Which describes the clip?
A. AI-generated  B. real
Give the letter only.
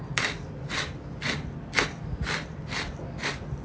B